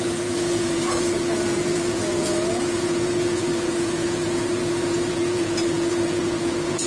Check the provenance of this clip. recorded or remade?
remade